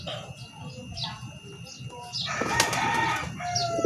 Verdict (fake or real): real